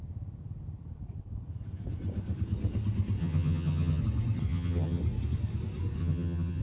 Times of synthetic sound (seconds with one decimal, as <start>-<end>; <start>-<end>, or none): 3.2-4.0; 4.5-5.0; 6.0-6.6